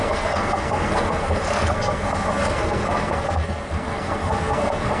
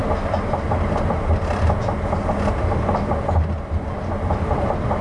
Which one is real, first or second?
second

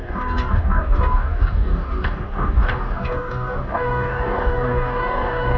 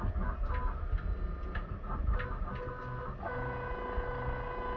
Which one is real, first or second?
second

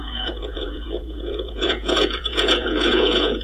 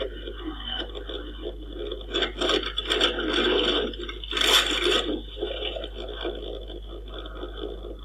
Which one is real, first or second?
second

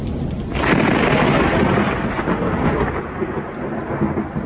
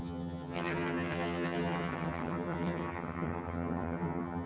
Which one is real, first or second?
first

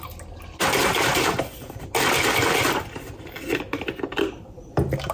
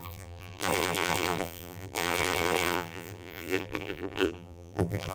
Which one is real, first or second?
first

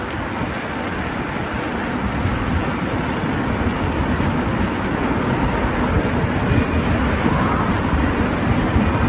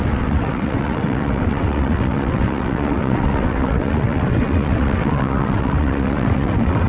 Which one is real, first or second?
first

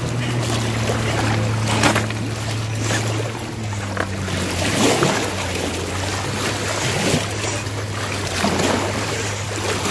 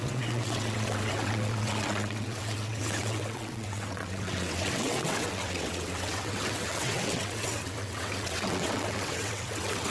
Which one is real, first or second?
first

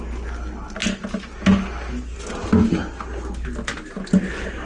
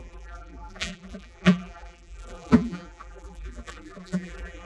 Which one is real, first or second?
first